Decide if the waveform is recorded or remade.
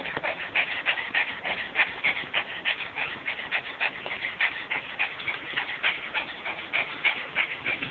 recorded